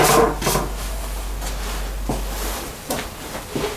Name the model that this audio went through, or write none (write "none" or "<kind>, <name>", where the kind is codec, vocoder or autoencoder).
none